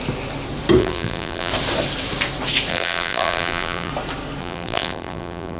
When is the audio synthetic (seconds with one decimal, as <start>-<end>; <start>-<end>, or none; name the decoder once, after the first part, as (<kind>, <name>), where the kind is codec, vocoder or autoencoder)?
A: 0.8-1.5 (vocoder, BigVGAN v2); 2.7-3.9; 4.4-5.6